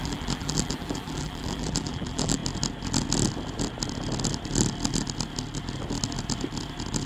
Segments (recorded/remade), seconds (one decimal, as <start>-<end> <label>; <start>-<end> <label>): 0.0-2.4 remade; 2.4-7.1 recorded